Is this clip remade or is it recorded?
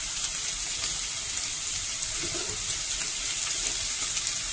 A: recorded